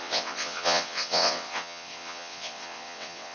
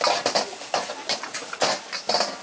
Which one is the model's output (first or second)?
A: first